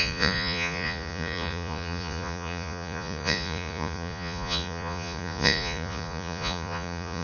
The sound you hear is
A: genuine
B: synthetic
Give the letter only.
B